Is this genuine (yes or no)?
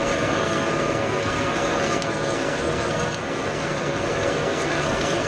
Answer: no